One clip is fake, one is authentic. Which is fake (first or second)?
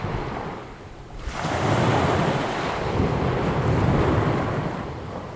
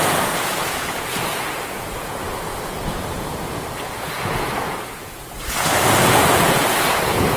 second